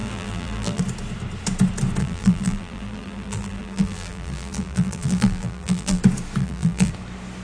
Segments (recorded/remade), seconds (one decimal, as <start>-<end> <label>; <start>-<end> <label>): 0.0-0.8 remade; 0.8-2.0 recorded; 2.0-6.0 remade; 6.0-6.4 recorded; 6.4-6.9 remade; 6.9-7.4 recorded